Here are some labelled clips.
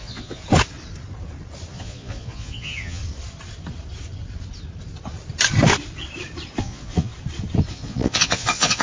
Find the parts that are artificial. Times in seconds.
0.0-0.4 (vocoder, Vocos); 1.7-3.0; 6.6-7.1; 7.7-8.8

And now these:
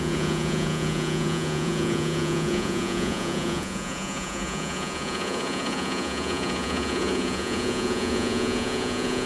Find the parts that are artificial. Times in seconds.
0.0-9.3 (vocoder, Vocos)

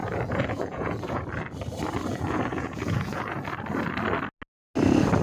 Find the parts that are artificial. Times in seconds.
0.0-1.2 (vocoder, Vocos); 2.1-3.4

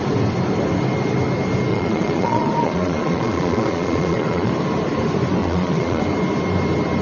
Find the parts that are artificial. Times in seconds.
1.7-4.5 (vocoder, Vocos); 5.4-6.0

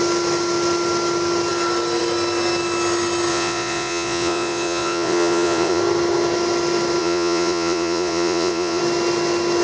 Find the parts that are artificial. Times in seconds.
3.3-5.8 (vocoder, Vocos); 7.0-8.8

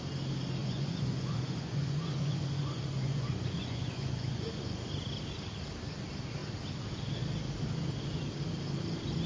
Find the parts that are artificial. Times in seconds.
0.6-4.9 (vocoder, Vocos)

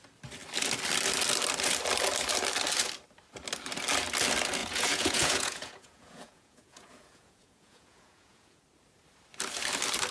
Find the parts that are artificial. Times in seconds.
4.6-8.6 (vocoder, Vocos)